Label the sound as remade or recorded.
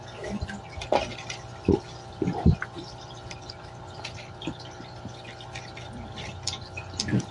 remade